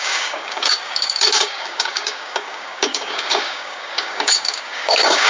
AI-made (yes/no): yes